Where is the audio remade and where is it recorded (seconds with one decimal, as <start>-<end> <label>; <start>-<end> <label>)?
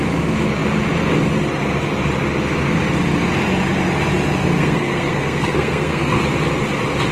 0.0-4.4 recorded; 4.4-6.2 remade; 6.2-7.1 recorded